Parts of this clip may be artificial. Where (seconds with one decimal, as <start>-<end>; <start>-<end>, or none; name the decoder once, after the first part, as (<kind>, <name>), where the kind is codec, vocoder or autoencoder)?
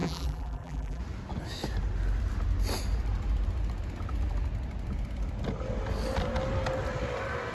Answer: 0.0-1.0 (vocoder, BigVGAN v2)